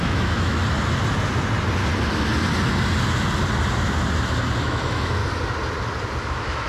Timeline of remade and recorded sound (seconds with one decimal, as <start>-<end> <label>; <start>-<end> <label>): 0.0-0.6 remade; 0.6-4.6 recorded; 4.6-5.2 remade; 5.2-6.2 recorded; 6.2-6.7 remade